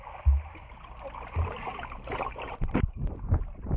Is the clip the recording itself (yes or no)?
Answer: yes